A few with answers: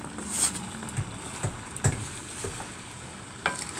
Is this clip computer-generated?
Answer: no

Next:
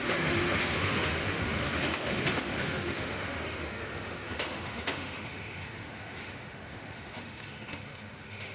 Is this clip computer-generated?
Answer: yes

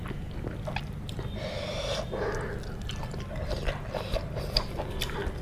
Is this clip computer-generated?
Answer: no